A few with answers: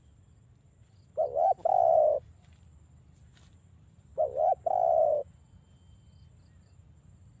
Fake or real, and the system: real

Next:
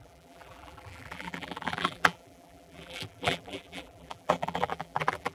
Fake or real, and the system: fake, vocoder, BigVGAN v2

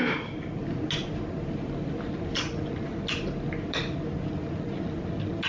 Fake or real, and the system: real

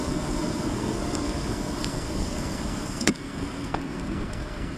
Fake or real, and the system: fake, codec, SNAC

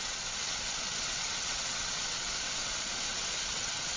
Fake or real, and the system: fake, vocoder, WaveNeXt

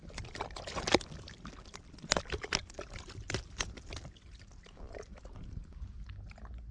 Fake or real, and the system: real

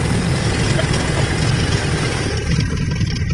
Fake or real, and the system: real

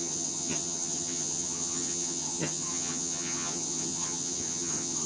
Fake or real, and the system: fake, vocoder, HiFi-GAN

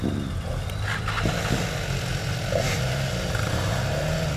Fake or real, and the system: real